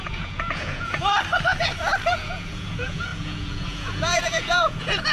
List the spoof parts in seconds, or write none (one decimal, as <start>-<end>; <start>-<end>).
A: 0.0-1.1; 2.1-5.1